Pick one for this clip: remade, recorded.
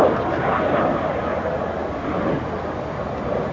recorded